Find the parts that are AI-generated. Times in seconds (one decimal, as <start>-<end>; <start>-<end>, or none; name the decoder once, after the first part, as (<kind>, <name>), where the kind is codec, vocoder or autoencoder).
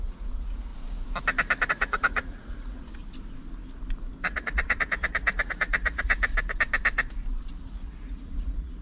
0.0-0.7 (vocoder, Vocos); 1.7-3.0; 4.2-6.3; 7.5-8.8